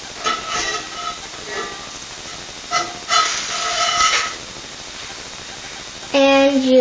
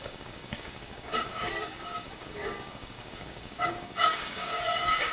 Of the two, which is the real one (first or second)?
first